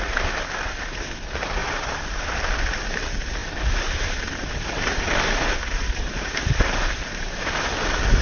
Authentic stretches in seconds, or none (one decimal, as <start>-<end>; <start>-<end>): 0.0-1.6; 2.4-3.4; 7.7-8.2